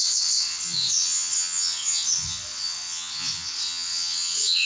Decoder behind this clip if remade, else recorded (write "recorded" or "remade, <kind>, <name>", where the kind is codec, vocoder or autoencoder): remade, vocoder, WaveNeXt